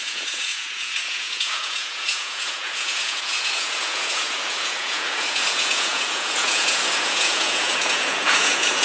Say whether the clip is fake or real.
fake